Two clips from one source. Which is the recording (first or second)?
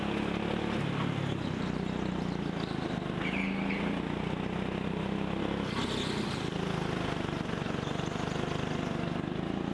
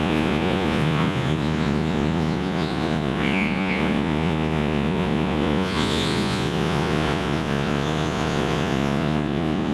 first